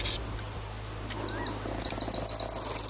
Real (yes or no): yes